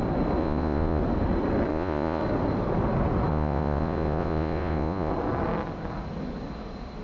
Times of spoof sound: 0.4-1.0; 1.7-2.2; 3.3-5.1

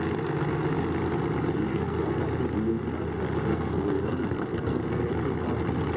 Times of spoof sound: 1.7-2.2; 3.5-5.0

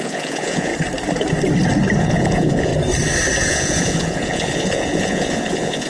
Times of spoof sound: 0.0-0.7; 2.0-2.7; 3.5-5.9

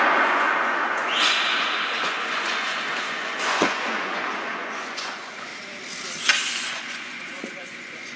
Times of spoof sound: 0.0-5.5; 6.5-8.2

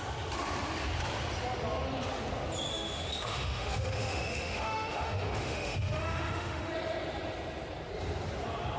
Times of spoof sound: 2.7-6.7